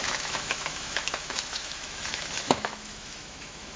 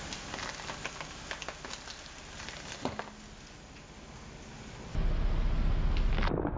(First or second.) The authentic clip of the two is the second